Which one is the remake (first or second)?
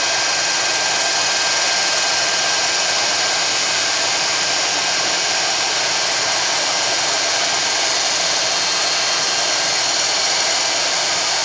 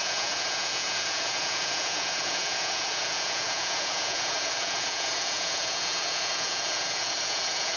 second